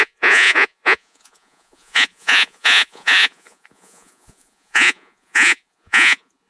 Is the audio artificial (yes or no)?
yes